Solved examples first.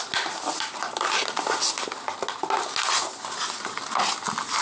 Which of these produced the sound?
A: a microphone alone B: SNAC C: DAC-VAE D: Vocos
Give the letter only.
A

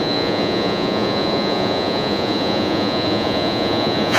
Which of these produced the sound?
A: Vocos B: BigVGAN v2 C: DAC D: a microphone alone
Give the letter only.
A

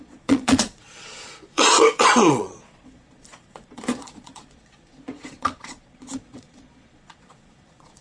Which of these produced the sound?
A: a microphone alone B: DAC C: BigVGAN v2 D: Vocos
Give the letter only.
D